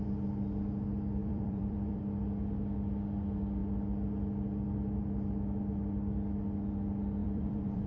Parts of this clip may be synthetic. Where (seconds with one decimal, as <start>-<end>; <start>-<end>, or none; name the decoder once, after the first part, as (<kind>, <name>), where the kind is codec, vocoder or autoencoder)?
1.2-2.0 (vocoder, BigVGAN v2); 7.2-7.9